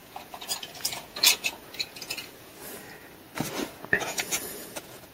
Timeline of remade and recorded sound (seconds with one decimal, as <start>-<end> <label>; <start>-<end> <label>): 0.0-2.5 remade; 2.5-3.8 recorded; 3.8-5.1 remade